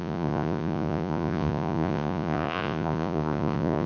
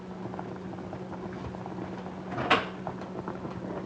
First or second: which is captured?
second